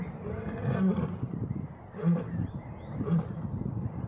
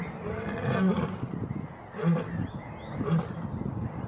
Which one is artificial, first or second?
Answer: first